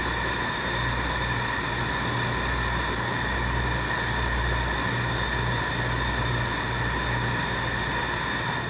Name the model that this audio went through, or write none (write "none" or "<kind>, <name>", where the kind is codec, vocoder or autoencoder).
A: none